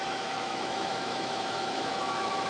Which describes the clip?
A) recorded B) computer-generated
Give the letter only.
B